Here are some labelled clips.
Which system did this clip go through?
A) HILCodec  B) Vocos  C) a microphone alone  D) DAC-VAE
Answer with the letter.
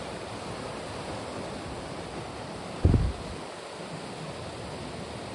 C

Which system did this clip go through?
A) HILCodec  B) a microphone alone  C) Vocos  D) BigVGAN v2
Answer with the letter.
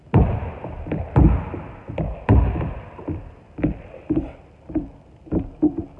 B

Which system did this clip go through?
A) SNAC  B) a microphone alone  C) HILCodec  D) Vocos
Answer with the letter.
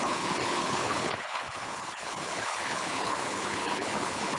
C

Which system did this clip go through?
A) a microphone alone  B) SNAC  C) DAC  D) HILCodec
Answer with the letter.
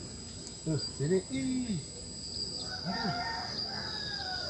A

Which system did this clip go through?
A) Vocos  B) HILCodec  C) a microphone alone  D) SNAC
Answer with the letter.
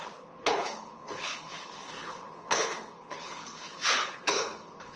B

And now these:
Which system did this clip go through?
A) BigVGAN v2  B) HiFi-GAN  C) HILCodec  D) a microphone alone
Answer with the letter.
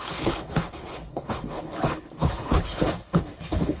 C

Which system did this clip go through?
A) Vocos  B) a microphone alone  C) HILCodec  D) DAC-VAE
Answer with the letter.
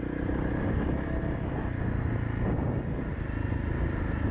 B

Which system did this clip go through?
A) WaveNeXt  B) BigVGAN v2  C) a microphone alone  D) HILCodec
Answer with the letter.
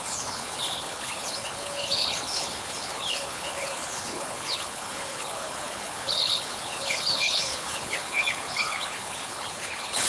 D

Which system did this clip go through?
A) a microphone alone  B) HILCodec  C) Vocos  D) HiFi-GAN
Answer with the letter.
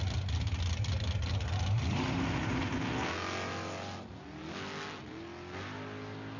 A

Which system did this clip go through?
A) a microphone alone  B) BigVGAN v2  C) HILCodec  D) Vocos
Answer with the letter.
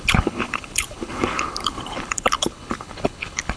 C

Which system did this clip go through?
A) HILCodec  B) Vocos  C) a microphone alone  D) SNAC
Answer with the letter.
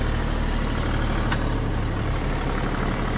C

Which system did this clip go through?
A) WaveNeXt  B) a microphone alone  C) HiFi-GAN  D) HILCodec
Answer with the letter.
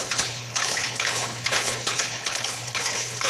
D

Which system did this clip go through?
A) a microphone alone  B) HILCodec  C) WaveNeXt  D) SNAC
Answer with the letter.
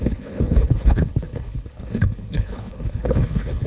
B